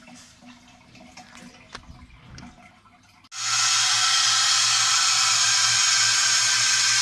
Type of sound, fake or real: real